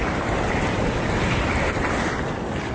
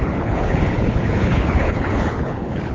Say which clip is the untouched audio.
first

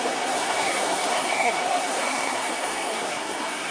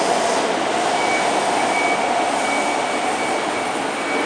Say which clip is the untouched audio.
second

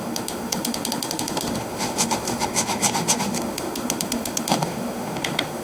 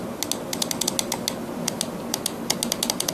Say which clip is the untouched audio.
second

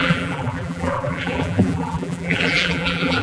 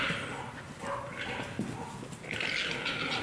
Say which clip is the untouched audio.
second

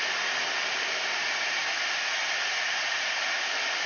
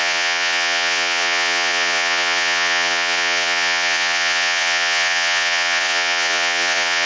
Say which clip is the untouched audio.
first